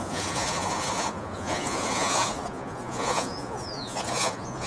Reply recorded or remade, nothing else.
remade